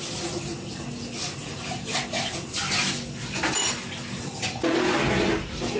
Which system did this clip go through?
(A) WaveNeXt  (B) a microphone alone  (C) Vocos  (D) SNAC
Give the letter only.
B